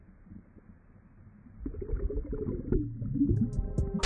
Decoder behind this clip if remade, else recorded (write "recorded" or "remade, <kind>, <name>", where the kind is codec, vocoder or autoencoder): recorded